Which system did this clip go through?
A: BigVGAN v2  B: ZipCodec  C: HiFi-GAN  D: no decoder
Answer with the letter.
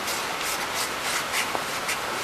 D